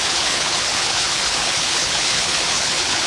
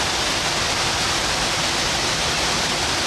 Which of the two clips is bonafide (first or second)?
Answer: second